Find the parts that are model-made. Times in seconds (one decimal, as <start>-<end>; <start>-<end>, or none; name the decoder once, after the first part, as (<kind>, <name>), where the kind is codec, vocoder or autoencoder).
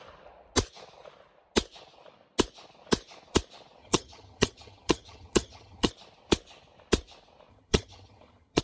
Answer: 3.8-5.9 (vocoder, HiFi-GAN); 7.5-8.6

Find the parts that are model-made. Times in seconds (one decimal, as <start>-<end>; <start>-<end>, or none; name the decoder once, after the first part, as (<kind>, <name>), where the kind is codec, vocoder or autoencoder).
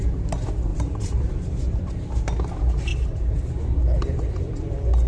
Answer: 0.7-1.8 (vocoder, BigVGAN v2); 2.9-3.6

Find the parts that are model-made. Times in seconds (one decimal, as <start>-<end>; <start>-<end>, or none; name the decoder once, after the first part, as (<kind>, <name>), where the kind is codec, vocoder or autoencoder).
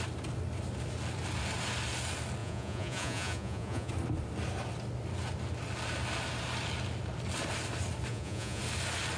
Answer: 2.4-3.9 (vocoder, Vocos); 8.1-8.6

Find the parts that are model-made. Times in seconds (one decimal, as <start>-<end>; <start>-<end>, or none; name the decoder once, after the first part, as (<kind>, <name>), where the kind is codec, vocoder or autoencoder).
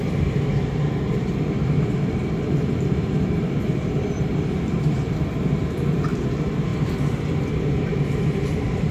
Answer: 0.0-6.7 (vocoder, BigVGAN v2); 7.5-8.9